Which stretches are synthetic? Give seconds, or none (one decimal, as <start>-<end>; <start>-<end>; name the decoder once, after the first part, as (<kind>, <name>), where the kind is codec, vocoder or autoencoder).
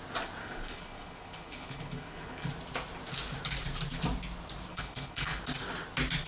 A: 0.4-2.5 (codec, HILCodec); 4.7-5.4